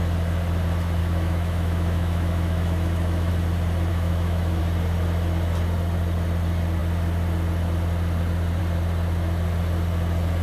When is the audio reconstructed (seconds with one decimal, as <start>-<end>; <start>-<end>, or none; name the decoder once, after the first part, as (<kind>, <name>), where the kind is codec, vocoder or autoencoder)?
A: 1.0-3.3 (autoencoder, DAC-VAE); 3.9-4.6